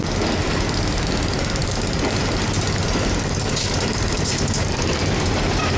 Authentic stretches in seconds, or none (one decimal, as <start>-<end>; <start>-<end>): 0.0-1.6; 5.1-5.8